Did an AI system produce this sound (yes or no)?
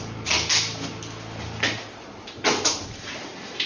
no